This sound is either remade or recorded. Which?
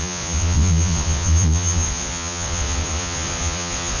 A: remade